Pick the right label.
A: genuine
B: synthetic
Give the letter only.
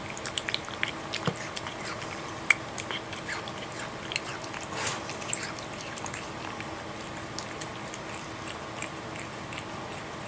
A